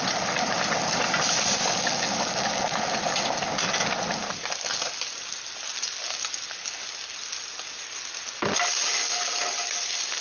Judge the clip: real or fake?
real